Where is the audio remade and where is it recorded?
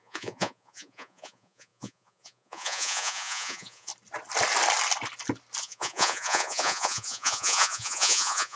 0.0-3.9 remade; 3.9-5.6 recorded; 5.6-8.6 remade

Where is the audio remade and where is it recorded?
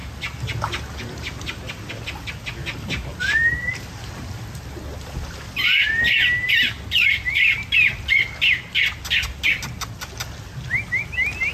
0.0-11.5 recorded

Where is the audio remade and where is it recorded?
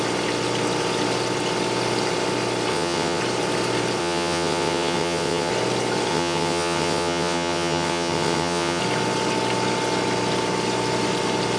0.0-2.7 recorded; 2.7-3.2 remade; 3.2-4.0 recorded; 4.0-5.5 remade; 5.5-6.1 recorded; 6.1-8.8 remade; 8.8-11.6 recorded